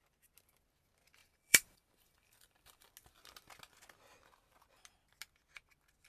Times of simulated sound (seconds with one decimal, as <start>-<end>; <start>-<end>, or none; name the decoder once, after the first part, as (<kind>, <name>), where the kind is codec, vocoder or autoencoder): 1.2-2.9 (vocoder, BigVGAN v2)